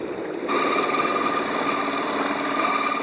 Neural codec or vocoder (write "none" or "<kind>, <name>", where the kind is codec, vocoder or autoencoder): none